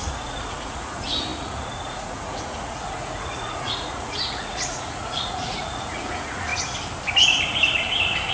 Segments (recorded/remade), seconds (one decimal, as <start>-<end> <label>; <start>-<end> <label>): 0.0-6.5 remade; 6.5-8.3 recorded